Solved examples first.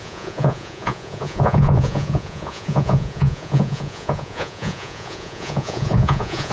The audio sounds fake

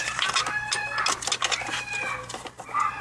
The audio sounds real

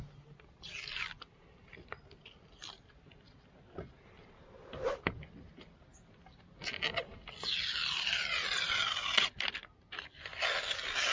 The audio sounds real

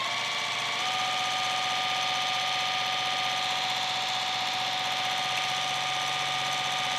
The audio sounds real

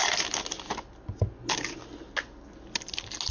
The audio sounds real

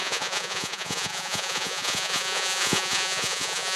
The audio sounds fake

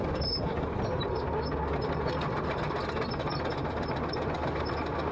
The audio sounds real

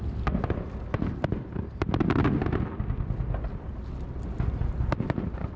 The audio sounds real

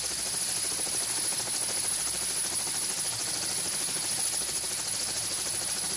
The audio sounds real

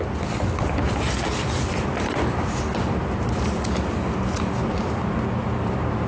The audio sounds fake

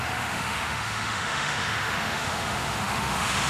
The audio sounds fake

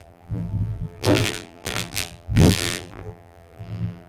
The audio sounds fake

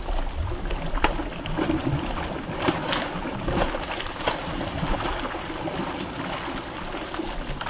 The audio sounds real